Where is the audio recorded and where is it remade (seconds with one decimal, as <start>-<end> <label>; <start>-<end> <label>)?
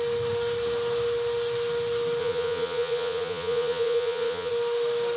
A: 0.0-2.2 recorded; 2.2-4.5 remade; 4.5-5.2 recorded